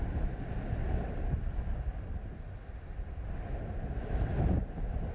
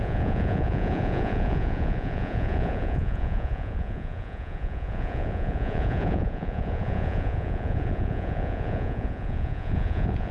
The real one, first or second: first